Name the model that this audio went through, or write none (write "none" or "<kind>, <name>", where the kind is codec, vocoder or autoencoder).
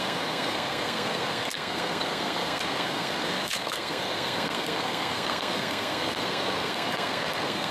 codec, SNAC